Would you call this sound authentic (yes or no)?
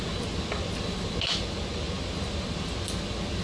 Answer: yes